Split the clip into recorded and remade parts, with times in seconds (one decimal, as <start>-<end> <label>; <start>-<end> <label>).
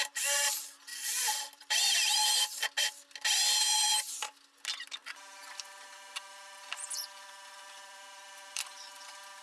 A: 0.0-0.9 recorded; 0.9-2.3 remade; 2.3-5.0 recorded; 5.0-9.4 remade